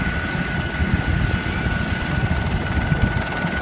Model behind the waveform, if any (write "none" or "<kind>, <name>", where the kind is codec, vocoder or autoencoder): none